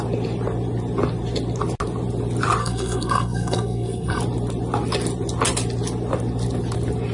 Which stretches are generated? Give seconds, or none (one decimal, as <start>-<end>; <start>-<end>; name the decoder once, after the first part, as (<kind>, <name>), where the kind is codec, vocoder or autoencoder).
2.6-4.2 (codec, SNAC)